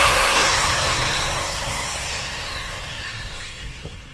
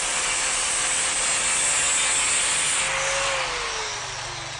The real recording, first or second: second